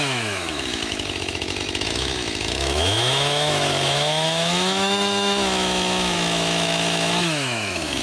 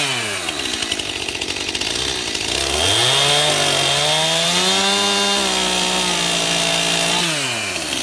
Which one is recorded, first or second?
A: second